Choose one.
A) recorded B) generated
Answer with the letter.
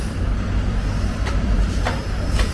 B